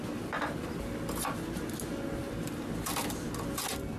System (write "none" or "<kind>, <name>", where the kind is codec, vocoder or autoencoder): none